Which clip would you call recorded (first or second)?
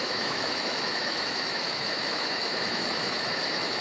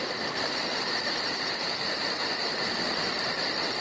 second